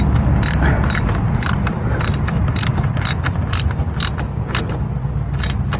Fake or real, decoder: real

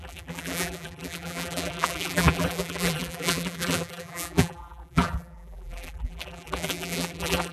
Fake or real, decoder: fake, vocoder, BigVGAN v2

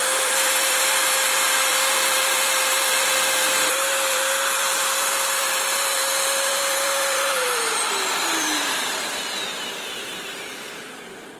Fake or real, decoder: fake, vocoder, BigVGAN v2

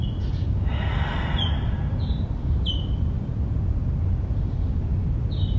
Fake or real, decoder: fake, vocoder, BigVGAN v2